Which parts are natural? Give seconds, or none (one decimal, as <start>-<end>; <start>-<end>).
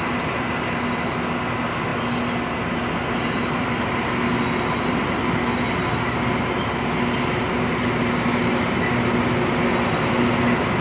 0.0-10.8